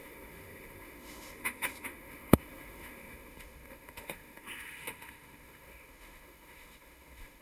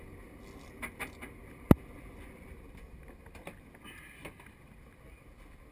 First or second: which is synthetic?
first